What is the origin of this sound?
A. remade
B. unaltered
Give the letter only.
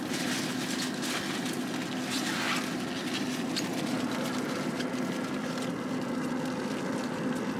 B